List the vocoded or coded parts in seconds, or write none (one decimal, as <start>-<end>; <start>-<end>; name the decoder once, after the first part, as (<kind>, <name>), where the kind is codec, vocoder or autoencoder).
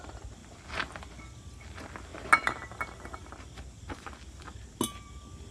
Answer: none